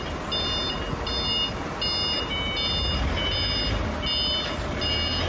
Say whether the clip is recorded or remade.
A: recorded